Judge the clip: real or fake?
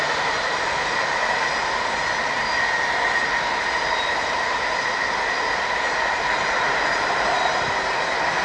real